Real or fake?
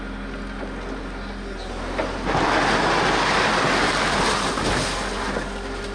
real